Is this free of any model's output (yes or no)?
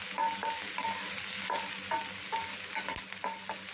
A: yes